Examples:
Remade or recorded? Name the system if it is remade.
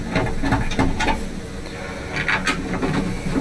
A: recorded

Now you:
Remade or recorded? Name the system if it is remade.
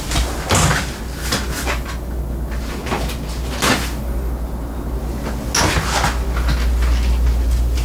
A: recorded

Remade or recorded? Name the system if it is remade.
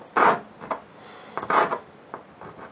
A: recorded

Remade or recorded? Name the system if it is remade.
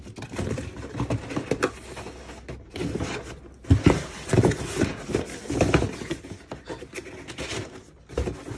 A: recorded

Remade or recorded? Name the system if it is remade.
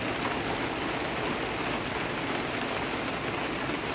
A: recorded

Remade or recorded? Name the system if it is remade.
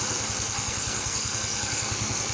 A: remade, codec, SNAC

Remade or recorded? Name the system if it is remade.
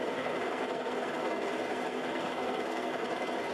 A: remade, codec, SNAC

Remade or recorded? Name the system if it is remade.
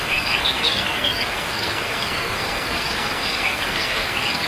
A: remade, codec, SNAC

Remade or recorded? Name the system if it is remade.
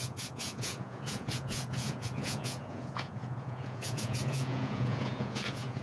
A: remade, vocoder, Vocos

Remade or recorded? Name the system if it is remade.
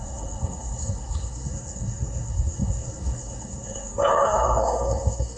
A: remade, codec, SNAC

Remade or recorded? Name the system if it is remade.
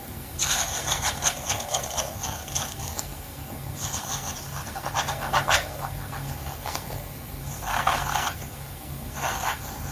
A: remade, codec, SNAC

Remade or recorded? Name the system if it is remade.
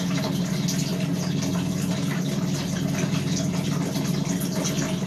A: recorded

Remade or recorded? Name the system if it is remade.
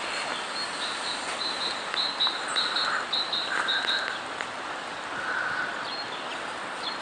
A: recorded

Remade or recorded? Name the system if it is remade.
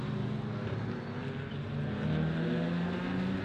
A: recorded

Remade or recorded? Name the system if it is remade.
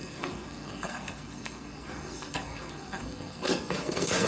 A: remade, codec, SNAC